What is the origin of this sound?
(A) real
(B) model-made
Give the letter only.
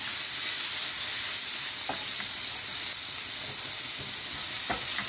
A